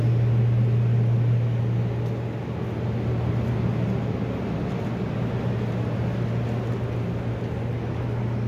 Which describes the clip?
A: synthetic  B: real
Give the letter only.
B